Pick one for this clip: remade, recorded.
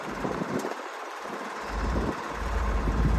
remade